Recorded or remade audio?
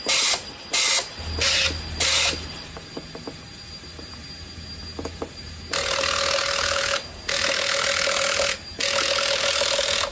recorded